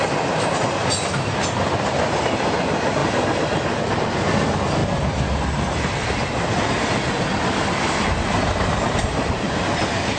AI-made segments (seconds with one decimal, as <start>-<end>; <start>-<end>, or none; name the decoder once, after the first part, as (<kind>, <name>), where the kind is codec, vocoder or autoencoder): none